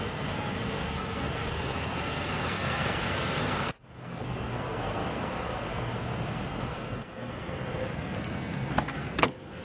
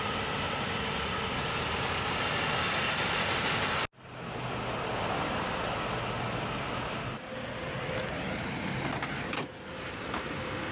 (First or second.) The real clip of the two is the second